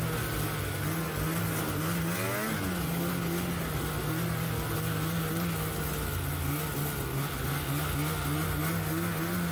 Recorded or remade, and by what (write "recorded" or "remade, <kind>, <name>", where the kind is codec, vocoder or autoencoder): recorded